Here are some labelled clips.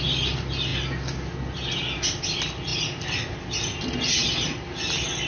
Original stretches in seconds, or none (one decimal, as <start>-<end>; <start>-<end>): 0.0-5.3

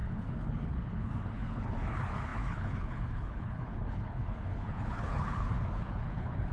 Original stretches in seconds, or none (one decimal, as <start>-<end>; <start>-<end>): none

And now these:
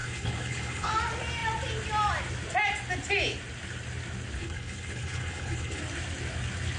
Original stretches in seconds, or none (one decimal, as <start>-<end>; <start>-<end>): 0.9-4.4; 5.8-6.8

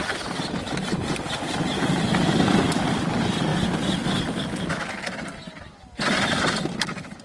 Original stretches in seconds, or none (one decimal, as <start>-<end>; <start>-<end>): 0.0-7.2

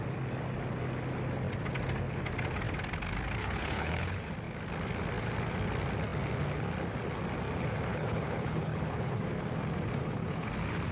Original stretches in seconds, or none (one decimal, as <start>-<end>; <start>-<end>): 0.0-3.4; 4.3-7.9; 9.2-10.0; 10.5-10.9